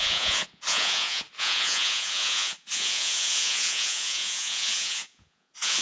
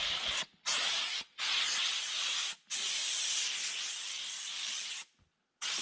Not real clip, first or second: first